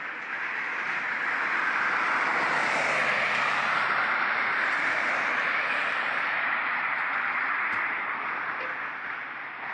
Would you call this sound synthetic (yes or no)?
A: yes